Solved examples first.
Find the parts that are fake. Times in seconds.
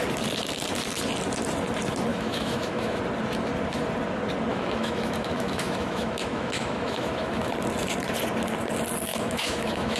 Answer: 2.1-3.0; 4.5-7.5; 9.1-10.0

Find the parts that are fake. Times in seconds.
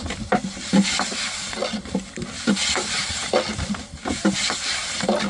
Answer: none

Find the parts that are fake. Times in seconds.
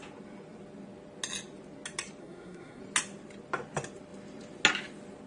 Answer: 2.2-2.8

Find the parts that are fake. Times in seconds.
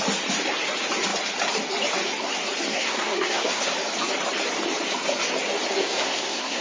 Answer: 2.7-3.6; 5.8-6.6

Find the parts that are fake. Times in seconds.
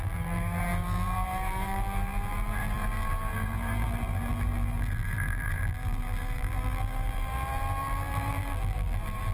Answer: 0.0-9.3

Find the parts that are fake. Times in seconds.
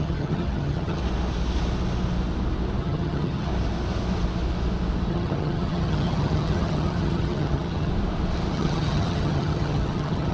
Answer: 0.0-1.0; 2.8-3.5; 5.1-7.9; 8.5-10.3